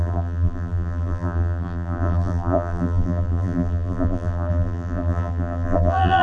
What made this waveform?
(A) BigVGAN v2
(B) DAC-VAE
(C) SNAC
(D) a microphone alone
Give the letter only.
A